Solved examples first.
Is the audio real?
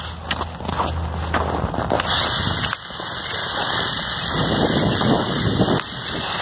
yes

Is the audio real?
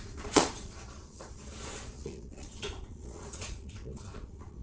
no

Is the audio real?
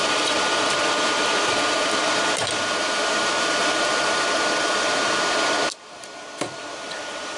no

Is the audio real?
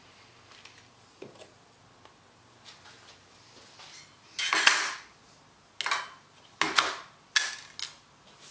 yes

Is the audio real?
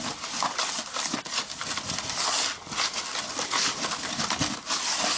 yes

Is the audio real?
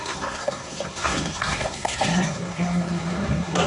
no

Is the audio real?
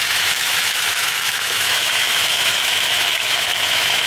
no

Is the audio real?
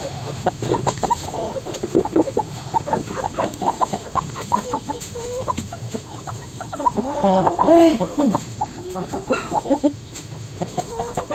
no